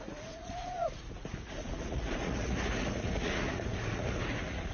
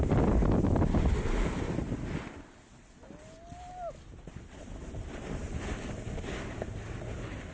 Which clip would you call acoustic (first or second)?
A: second